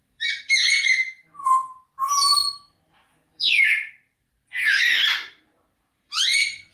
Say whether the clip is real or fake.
fake